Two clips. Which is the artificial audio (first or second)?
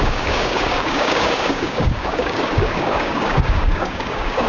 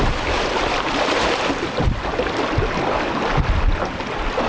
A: first